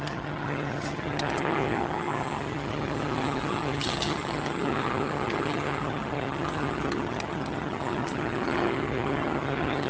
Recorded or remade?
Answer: remade